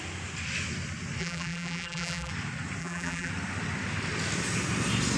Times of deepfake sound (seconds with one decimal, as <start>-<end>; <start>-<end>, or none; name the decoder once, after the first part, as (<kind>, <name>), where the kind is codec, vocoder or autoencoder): 1.2-2.3 (vocoder, BigVGAN v2); 2.8-3.3